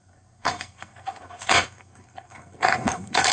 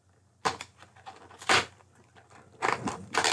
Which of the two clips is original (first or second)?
second